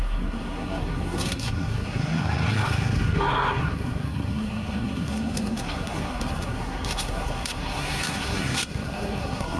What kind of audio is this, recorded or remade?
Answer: remade